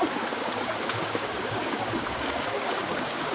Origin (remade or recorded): remade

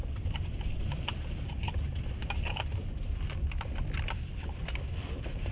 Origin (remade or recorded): recorded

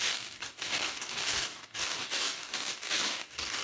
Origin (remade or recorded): remade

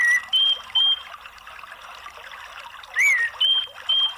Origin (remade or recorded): recorded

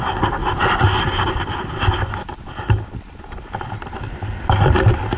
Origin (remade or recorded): recorded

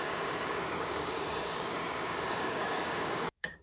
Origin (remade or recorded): remade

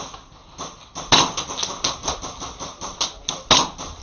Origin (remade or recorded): recorded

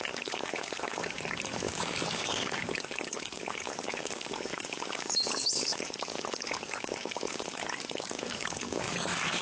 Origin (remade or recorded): remade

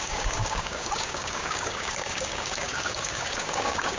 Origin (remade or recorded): remade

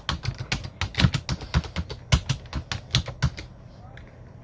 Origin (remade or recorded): recorded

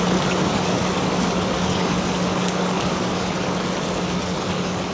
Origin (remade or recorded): remade